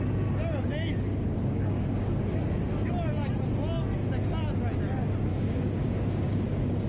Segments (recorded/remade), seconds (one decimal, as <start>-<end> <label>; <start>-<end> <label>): 0.0-1.1 recorded; 1.1-2.2 remade; 2.2-5.3 recorded; 5.3-6.9 remade